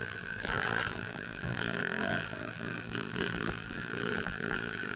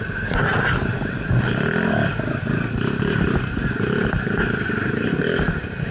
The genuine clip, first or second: second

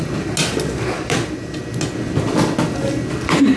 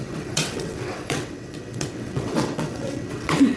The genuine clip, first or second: first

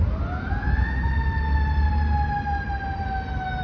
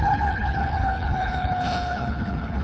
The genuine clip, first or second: first